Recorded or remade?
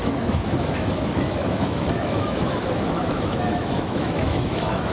remade